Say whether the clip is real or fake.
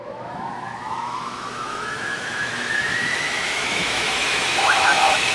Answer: fake